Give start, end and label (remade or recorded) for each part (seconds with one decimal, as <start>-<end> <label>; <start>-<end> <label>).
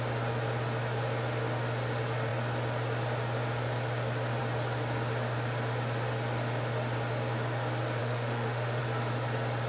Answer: 0.0-8.0 recorded; 8.0-8.8 remade; 8.8-9.7 recorded